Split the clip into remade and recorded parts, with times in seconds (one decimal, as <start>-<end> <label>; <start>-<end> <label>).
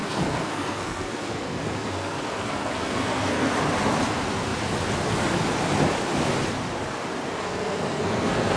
0.0-3.5 remade; 3.5-7.4 recorded; 7.4-8.6 remade